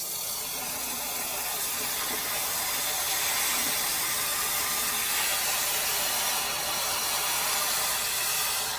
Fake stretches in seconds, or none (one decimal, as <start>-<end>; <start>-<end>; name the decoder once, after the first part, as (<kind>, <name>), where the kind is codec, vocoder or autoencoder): none